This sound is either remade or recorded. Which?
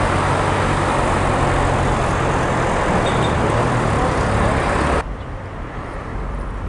recorded